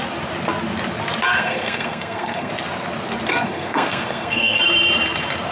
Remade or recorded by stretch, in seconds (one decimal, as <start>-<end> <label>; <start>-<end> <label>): 0.0-1.3 recorded; 1.3-2.5 remade; 2.5-3.3 recorded; 3.3-4.6 remade; 4.6-5.5 recorded